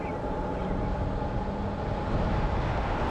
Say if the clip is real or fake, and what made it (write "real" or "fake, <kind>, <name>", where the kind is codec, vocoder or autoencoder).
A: real